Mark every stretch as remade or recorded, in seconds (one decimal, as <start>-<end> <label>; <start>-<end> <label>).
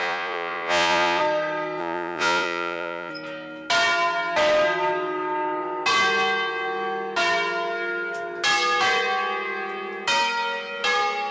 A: 0.0-1.2 remade; 1.2-1.8 recorded; 1.8-3.1 remade; 3.1-11.3 recorded